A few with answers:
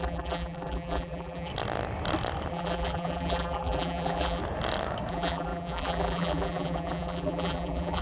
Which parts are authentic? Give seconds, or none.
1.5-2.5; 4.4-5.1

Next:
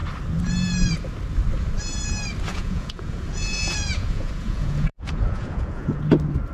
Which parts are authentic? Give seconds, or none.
0.0-2.5; 6.0-6.5

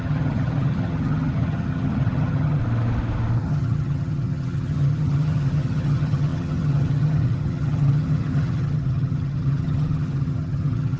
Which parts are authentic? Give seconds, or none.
2.6-3.4

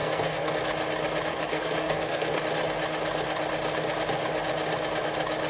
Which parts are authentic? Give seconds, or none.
0.5-1.3; 2.4-5.5

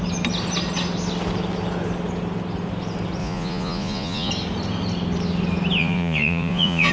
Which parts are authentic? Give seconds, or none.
0.0-3.2; 4.3-5.8

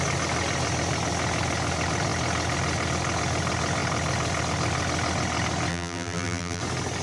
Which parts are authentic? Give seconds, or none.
0.0-5.7; 6.6-7.0